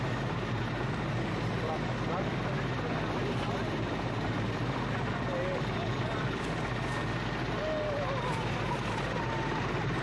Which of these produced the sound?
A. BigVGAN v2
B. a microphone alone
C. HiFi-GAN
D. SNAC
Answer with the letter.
B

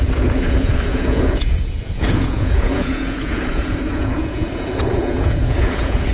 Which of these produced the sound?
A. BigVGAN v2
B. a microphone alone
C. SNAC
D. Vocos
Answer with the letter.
D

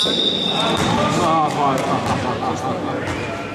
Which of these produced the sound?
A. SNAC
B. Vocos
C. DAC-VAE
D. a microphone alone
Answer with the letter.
D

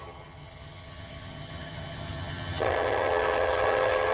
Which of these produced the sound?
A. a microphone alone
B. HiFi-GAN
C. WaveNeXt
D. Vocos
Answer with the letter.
B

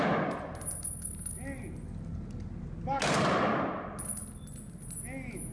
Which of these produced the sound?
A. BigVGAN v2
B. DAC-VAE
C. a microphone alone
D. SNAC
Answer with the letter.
C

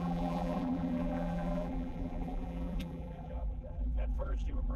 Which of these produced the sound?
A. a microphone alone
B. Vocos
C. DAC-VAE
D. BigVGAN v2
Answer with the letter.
D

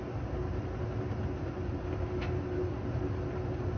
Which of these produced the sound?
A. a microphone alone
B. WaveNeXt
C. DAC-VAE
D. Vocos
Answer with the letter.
A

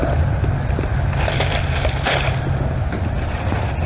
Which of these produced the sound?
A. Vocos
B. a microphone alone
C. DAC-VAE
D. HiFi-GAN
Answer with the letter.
B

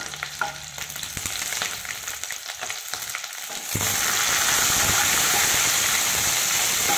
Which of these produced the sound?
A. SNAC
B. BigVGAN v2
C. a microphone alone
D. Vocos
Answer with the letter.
B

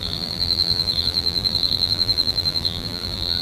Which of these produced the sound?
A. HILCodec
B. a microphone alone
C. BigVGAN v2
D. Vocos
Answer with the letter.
C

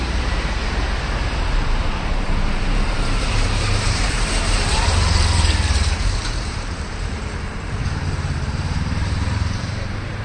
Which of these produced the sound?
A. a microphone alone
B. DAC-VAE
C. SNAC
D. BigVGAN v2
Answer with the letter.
D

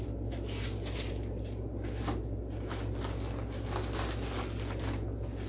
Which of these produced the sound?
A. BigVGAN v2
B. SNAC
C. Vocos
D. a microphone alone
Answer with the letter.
D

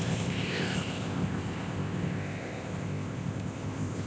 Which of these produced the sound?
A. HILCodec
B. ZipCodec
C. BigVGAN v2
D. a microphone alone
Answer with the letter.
B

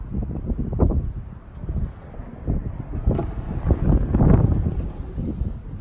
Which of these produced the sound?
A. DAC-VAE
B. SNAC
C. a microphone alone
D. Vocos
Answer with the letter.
C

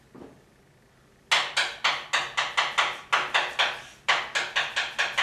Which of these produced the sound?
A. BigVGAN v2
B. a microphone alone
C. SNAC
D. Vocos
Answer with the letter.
B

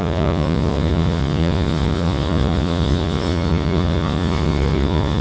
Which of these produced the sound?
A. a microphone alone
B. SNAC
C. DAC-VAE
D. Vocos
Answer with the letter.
D